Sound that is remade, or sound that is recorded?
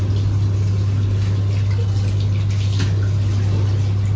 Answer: recorded